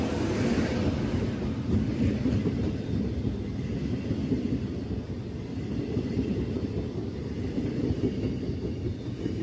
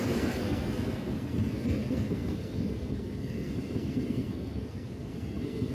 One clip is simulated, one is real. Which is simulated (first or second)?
second